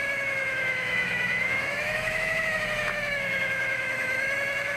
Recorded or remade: remade